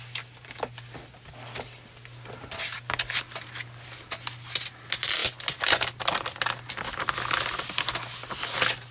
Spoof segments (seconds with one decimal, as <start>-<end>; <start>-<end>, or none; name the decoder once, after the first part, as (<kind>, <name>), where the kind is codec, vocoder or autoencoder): none